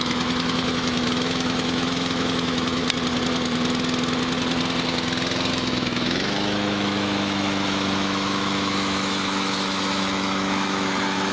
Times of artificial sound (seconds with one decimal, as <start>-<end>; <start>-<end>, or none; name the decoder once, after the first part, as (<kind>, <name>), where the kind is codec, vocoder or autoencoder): 0.0-2.8 (autoencoder, DAC-VAE); 5.5-11.3